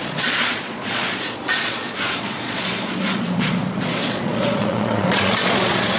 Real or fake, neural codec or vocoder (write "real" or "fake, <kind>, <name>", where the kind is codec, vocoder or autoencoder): fake, vocoder, Vocos